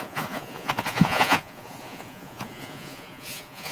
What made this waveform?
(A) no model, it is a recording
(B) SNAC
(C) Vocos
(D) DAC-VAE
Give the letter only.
C